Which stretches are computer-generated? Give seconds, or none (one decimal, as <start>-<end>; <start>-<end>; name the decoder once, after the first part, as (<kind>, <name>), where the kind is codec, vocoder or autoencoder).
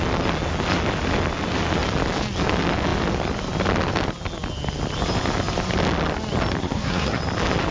6.6-7.2 (codec, SNAC)